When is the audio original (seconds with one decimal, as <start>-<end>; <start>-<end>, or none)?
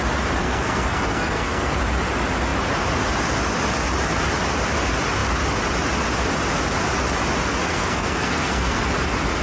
0.0-0.4; 1.8-7.6; 8.8-9.4